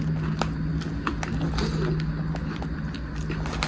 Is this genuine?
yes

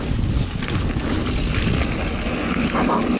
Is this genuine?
yes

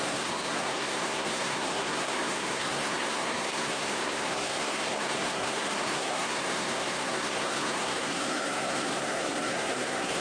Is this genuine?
no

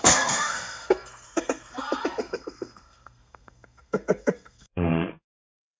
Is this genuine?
no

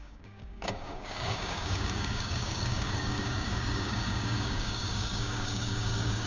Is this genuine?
no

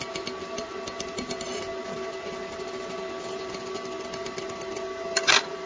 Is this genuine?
yes